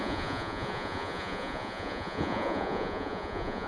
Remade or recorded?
remade